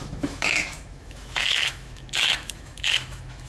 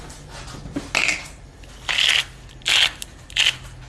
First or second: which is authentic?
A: second